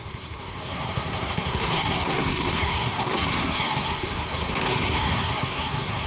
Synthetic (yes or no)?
yes